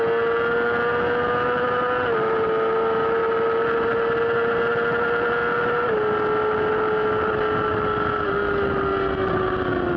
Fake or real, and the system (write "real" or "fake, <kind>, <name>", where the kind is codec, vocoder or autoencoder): real